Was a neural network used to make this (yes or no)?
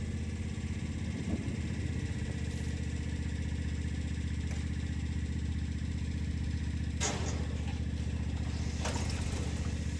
no